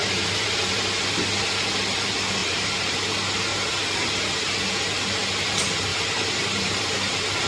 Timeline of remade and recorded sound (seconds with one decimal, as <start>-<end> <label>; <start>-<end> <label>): 0.0-1.2 remade; 1.2-2.4 recorded; 2.4-3.0 remade; 3.0-5.9 recorded; 5.9-6.9 remade; 6.9-7.5 recorded